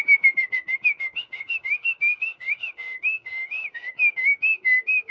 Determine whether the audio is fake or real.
fake